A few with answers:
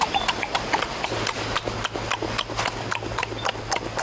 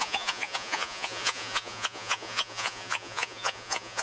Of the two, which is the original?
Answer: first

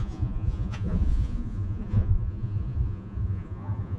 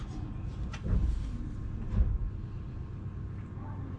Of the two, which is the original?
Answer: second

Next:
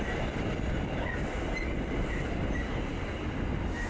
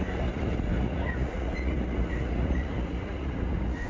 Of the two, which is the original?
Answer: first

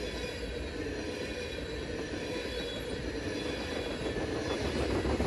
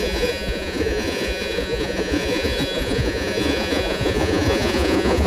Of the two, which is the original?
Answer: first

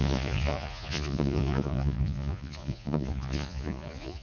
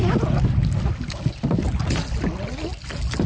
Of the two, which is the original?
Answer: second